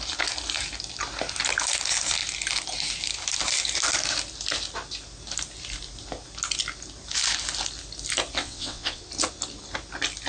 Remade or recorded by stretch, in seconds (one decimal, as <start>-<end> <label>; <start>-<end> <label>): 0.0-8.4 recorded; 8.4-9.0 remade; 9.0-10.3 recorded